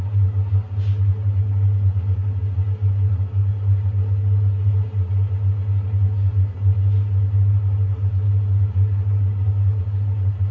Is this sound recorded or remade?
recorded